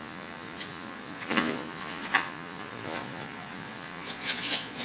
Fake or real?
fake